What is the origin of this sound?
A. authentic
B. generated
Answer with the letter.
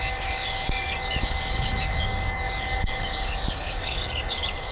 B